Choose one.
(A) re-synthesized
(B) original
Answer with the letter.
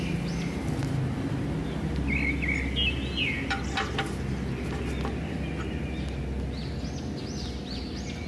B